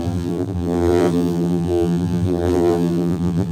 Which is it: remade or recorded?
remade